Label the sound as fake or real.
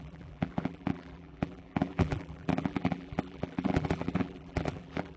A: fake